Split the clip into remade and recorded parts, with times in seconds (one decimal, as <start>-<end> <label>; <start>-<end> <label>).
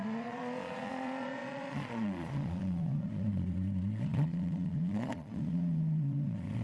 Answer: 0.0-6.6 remade